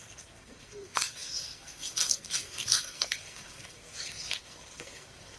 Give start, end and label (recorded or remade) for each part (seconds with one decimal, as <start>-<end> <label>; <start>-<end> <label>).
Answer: 0.0-5.4 remade